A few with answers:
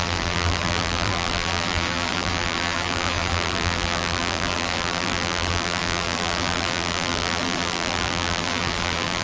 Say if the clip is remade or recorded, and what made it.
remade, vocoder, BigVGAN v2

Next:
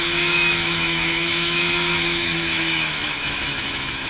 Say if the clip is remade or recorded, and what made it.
remade, autoencoder, DAC-VAE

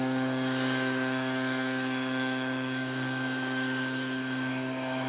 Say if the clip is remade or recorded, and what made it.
remade, codec, DAC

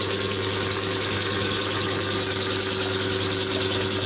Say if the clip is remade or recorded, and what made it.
remade, codec, DAC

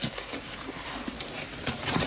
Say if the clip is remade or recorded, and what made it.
remade, vocoder, BigVGAN v2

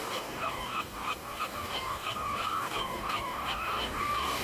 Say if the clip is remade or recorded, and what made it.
remade, codec, DAC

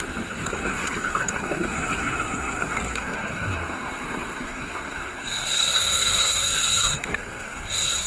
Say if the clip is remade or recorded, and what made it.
remade, codec, SNAC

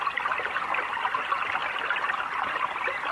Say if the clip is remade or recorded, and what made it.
recorded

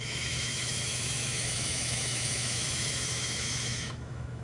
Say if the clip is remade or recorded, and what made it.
remade, autoencoder, DAC-VAE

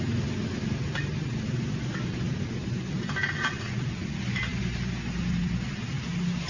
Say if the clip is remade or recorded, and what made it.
recorded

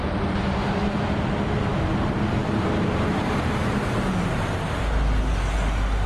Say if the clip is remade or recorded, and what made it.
recorded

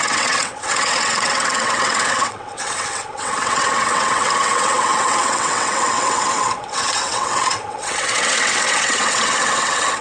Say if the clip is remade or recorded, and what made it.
remade, vocoder, WaveNeXt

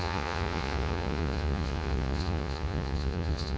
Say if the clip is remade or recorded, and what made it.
remade, vocoder, Vocos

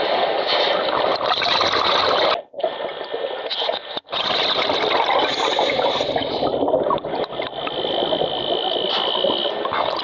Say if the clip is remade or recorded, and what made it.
recorded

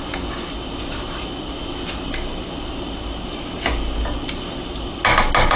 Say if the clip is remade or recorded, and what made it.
recorded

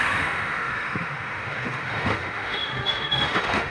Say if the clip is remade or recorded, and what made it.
remade, autoencoder, DAC-VAE